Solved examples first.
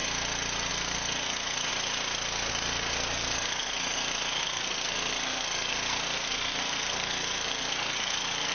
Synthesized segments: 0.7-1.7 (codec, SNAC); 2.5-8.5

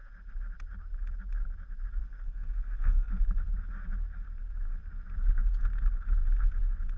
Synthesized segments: 2.0-3.1 (codec, SNAC)

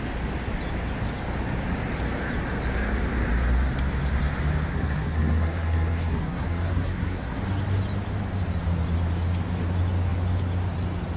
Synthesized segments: 4.7-7.4 (codec, SNAC)